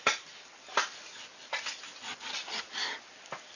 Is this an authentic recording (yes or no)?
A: yes